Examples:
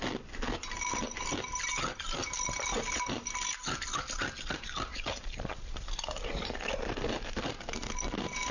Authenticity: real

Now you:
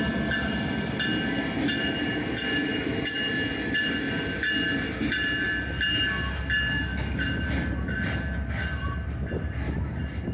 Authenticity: real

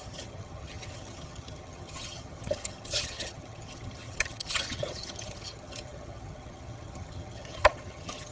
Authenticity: fake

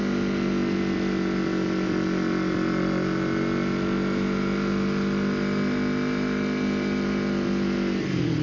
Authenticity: real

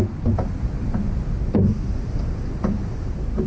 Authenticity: real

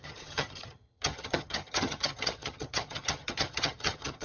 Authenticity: fake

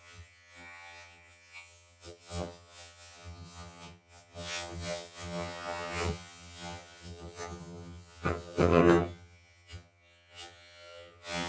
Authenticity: fake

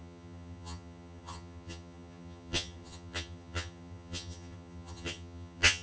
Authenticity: fake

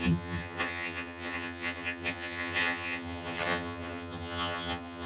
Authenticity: fake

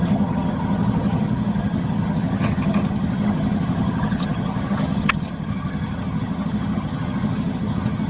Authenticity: fake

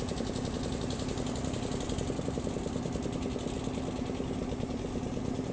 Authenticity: real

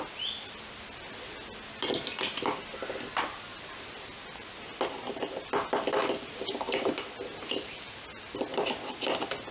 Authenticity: real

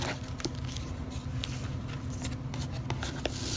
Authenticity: real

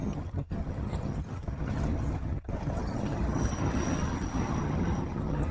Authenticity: fake